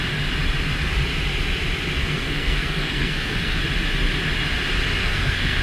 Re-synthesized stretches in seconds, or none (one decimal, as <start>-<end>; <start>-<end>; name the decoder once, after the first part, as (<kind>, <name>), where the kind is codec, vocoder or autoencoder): 2.0-3.6 (codec, SNAC); 5.0-5.6